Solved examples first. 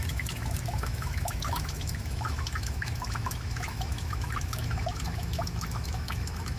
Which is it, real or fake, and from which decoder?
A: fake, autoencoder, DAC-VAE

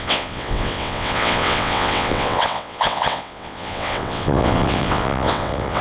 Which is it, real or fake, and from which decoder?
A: fake, vocoder, WaveNeXt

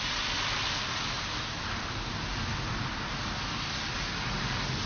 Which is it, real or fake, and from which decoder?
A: real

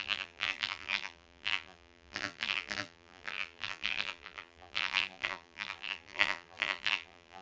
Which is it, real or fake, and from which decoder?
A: fake, vocoder, BigVGAN v2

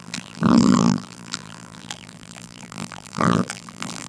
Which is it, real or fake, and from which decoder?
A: fake, vocoder, BigVGAN v2